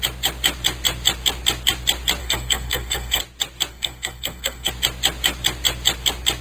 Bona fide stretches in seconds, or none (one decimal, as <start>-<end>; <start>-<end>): 0.0-2.2; 3.2-3.7; 4.7-6.4